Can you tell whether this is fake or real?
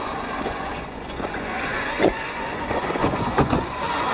fake